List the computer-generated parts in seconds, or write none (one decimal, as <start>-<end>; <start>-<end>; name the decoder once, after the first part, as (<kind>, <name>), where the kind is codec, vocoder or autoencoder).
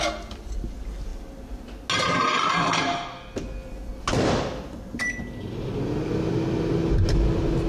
none